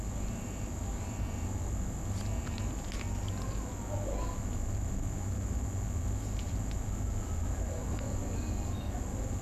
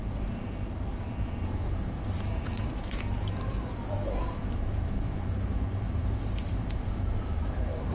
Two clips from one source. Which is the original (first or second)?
first